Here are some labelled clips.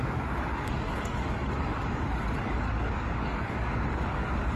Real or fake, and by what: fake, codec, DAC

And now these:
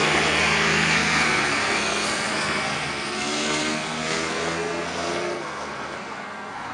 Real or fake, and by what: fake, codec, SNAC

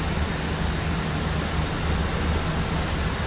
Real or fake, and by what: real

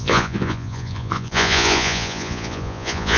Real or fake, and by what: fake, vocoder, Vocos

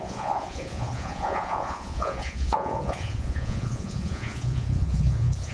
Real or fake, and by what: fake, vocoder, Vocos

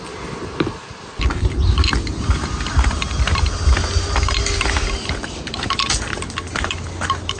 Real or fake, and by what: real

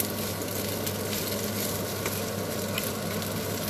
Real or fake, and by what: real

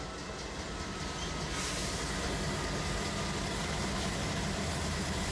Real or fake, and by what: real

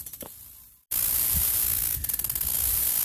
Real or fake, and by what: real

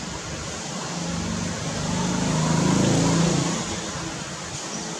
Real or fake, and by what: real